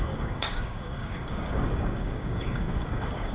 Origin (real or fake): fake